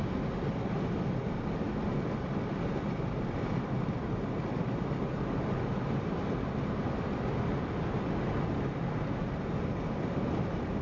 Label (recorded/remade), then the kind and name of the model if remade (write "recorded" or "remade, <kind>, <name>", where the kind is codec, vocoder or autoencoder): recorded